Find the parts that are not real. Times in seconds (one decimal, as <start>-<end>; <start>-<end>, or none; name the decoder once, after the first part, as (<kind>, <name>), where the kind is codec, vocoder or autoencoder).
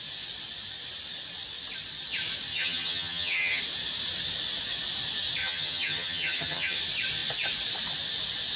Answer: 2.5-3.6 (vocoder, HiFi-GAN); 5.4-6.8